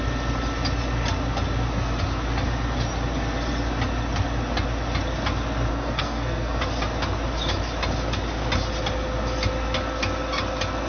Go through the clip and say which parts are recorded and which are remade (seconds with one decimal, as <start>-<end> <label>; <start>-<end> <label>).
0.0-5.7 recorded; 5.7-6.6 remade; 6.6-10.9 recorded